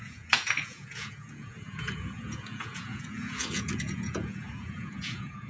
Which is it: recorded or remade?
remade